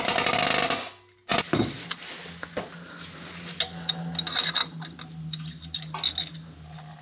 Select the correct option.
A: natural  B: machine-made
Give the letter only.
A